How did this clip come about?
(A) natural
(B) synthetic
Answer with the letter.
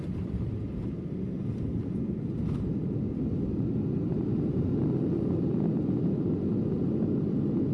A